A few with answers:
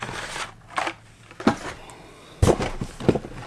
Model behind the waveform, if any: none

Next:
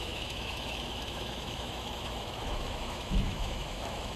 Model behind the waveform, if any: autoencoder, DAC-VAE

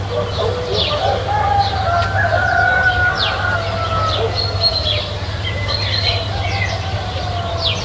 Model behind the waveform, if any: none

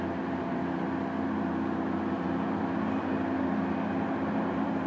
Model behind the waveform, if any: none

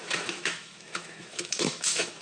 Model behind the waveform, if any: autoencoder, DAC-VAE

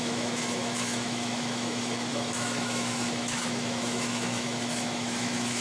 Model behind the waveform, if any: autoencoder, DAC-VAE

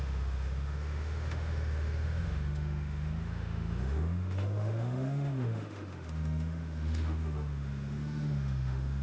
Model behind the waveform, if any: autoencoder, DAC-VAE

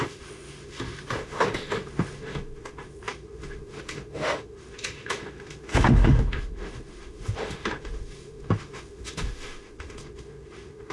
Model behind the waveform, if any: autoencoder, DAC-VAE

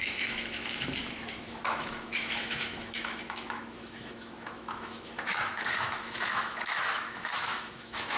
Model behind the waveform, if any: autoencoder, DAC-VAE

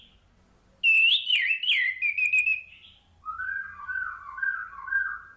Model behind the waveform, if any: none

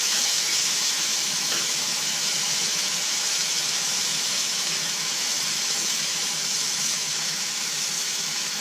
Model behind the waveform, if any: autoencoder, DAC-VAE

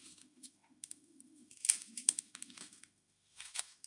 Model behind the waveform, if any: autoencoder, DAC-VAE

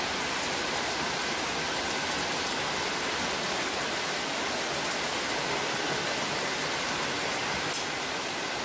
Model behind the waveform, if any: none